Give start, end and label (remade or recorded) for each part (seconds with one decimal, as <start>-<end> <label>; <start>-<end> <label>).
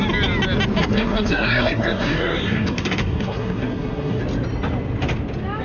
0.0-0.8 recorded; 0.8-4.2 remade; 4.2-5.6 recorded